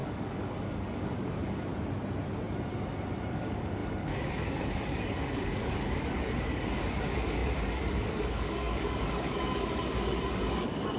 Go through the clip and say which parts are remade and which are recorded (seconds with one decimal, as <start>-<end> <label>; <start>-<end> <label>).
0.0-1.7 remade; 1.7-3.3 recorded; 3.3-11.0 remade